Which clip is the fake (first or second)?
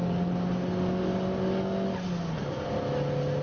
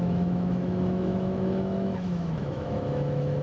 second